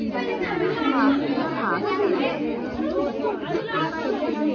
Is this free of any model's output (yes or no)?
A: yes